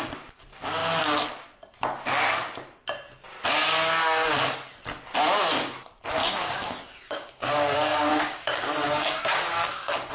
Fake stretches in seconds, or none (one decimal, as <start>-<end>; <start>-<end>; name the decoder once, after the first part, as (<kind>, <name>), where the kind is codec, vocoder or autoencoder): 6.2-10.1 (codec, DAC)